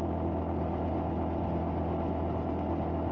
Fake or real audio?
real